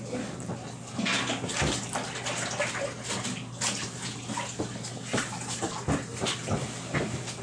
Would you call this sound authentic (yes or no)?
yes